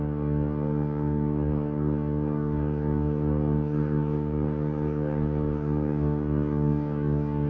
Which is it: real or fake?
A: fake